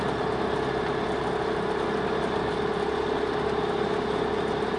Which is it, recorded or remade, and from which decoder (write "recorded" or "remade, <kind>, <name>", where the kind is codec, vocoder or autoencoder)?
recorded